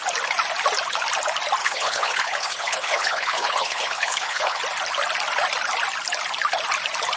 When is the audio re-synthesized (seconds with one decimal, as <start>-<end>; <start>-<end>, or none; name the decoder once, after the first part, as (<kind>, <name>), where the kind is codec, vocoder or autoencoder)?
1.6-4.6 (codec, HILCodec)